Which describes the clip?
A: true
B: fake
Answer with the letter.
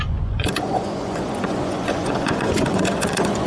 B